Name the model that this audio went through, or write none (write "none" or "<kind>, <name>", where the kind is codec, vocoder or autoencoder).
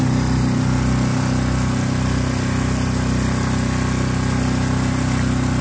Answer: none